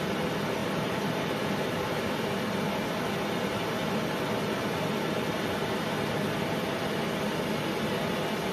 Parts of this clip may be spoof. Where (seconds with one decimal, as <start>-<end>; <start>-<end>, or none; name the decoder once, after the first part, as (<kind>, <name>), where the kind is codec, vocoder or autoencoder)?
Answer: 0.6-1.3 (vocoder, BigVGAN v2)